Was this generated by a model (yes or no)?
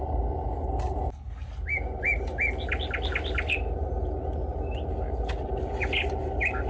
no